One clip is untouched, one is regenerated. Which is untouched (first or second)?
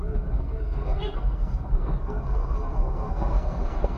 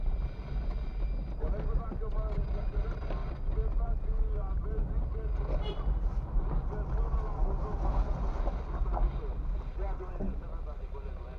second